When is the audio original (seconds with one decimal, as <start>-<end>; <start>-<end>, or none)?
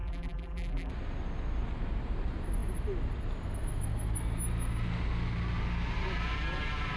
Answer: 0.9-7.0